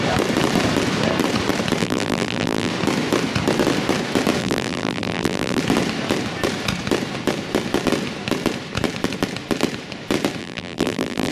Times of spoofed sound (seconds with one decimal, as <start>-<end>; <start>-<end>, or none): 1.8-2.7; 4.4-5.6; 10.4-11.3